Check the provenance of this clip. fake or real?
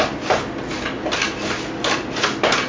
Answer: real